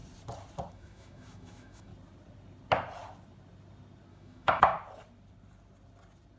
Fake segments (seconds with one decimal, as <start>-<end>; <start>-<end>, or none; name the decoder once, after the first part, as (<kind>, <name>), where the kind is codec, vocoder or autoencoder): 0.7-1.9 (autoencoder, DAC-VAE); 4.1-4.7